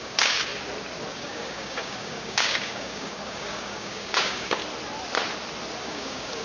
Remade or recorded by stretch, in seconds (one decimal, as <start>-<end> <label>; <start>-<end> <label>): 0.0-0.5 remade; 0.5-1.1 recorded; 1.1-4.6 remade; 4.6-5.8 recorded; 5.8-6.4 remade